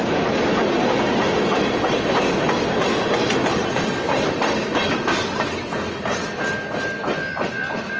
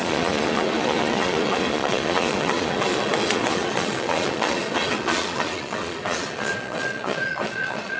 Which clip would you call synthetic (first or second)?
second